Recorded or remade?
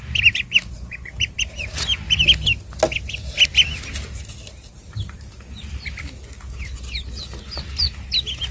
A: recorded